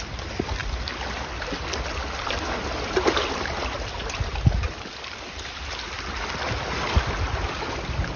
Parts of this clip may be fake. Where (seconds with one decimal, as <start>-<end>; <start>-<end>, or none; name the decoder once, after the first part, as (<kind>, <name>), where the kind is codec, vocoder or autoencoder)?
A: none